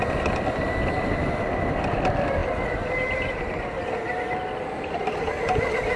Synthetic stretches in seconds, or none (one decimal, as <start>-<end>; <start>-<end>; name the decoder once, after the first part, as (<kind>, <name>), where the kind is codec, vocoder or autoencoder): none